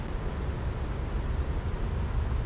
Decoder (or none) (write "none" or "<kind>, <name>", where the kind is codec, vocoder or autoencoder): none